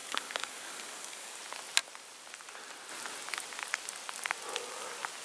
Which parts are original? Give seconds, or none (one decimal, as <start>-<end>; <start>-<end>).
1.4-5.2